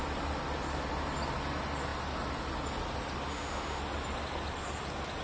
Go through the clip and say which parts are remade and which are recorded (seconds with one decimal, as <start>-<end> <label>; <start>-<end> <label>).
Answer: 0.0-3.3 recorded; 3.3-3.8 remade; 3.8-5.2 recorded